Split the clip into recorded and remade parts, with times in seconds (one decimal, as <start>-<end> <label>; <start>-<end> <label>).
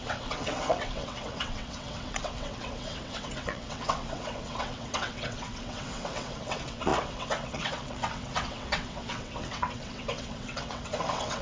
0.0-11.4 remade